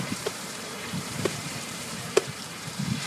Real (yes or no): no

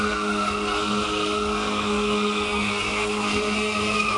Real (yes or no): no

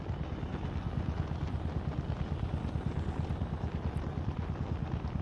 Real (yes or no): yes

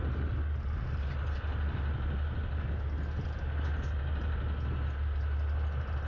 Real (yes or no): yes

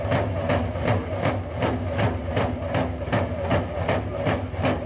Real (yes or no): yes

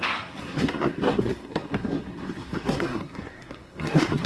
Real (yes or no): no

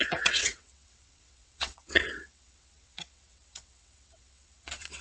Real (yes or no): no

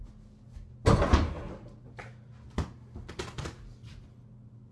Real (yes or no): yes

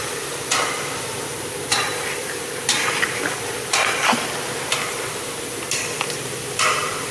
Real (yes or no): yes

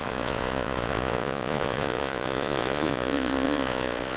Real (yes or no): no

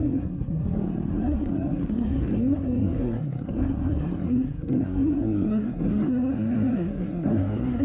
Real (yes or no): no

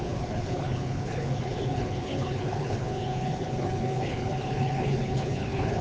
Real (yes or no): no